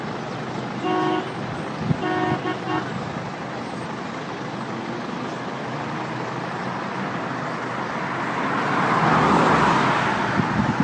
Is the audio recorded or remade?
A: recorded